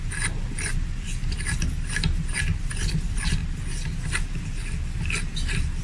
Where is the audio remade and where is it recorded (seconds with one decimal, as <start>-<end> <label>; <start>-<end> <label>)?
0.0-5.8 recorded